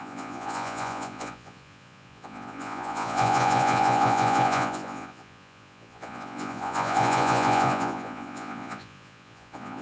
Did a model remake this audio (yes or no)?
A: yes